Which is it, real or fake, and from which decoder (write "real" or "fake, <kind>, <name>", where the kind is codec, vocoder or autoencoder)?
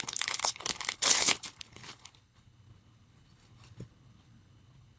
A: fake, codec, HILCodec